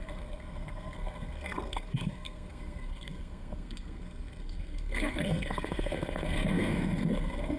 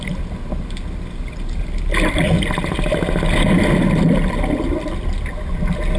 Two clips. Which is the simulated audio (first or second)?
first